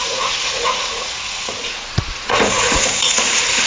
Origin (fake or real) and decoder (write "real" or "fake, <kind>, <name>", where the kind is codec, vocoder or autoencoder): fake, vocoder, Vocos